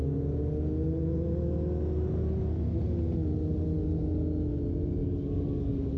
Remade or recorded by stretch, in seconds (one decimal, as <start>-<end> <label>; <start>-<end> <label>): 0.0-5.0 recorded; 5.0-6.0 remade